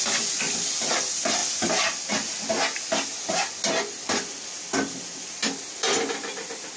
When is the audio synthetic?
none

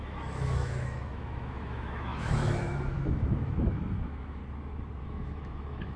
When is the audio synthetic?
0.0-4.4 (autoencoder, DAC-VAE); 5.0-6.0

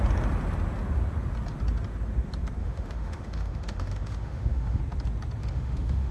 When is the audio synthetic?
2.6-4.8 (autoencoder, DAC-VAE); 5.4-6.1

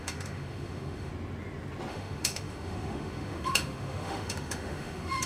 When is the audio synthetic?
0.0-1.1 (autoencoder, DAC-VAE); 1.9-5.3

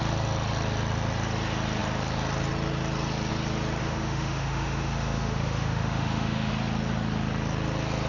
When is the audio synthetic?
3.8-6.5 (autoencoder, DAC-VAE)

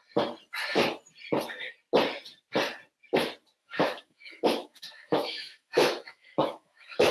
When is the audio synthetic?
3.6-7.1 (autoencoder, DAC-VAE)

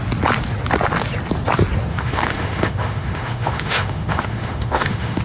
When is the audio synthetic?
1.9-5.2 (autoencoder, DAC-VAE)

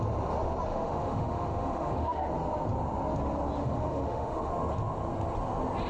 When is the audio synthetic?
0.7-2.3 (autoencoder, DAC-VAE); 3.6-4.5